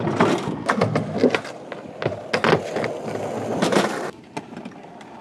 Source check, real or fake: real